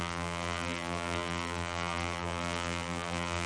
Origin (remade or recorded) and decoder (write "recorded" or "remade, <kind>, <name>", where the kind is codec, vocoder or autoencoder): remade, vocoder, BigVGAN v2